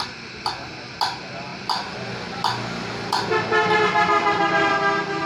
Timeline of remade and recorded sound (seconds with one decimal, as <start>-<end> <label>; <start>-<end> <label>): 0.0-5.3 recorded